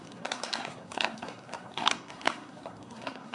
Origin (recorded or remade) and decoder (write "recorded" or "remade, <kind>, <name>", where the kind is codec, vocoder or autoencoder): remade, codec, SNAC